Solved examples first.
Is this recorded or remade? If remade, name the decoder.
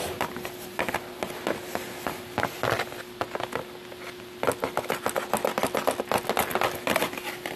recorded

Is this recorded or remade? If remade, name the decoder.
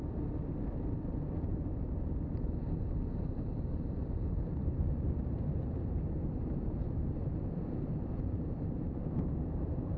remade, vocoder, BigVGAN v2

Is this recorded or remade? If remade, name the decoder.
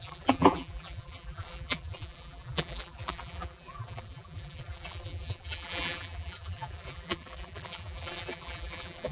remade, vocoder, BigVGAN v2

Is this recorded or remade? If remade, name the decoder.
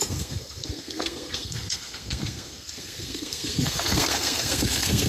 remade, codec, SNAC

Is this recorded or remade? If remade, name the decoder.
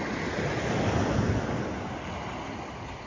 recorded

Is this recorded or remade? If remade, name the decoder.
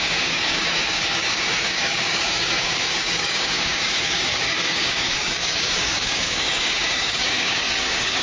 remade, codec, DAC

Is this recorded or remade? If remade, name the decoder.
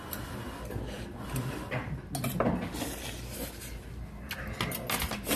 recorded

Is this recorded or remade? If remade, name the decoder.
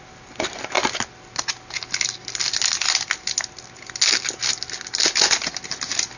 recorded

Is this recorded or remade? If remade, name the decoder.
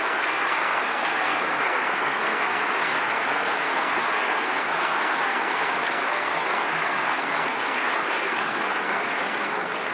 remade, codec, SNAC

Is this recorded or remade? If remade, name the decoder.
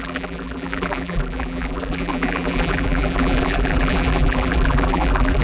remade, vocoder, BigVGAN v2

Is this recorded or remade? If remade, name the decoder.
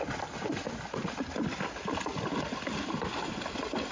recorded